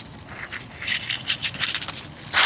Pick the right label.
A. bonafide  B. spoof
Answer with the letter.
A